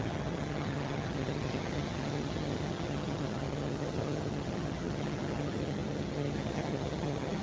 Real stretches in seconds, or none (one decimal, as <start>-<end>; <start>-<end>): none